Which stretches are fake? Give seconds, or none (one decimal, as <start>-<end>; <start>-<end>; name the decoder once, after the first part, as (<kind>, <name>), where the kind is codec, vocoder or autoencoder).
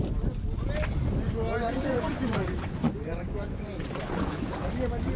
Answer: 1.6-4.7 (vocoder, Vocos)